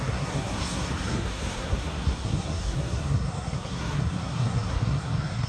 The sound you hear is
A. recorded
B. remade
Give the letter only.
B